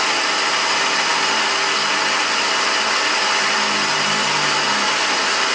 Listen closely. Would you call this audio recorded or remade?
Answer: recorded